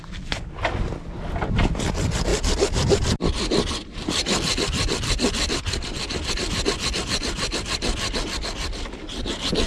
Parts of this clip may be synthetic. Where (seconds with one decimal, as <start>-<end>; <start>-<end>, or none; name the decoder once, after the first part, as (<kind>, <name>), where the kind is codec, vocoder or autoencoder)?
2.3-5.6 (vocoder, BigVGAN v2)